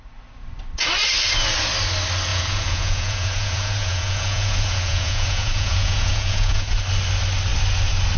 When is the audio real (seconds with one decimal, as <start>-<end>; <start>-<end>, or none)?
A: 0.0-2.3; 6.8-8.2